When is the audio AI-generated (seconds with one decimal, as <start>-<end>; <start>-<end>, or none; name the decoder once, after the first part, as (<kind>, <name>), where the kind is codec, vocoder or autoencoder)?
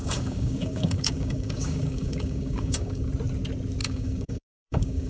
0.0-3.1 (codec, DAC); 3.8-5.1